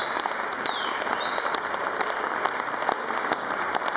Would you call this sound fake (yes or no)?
no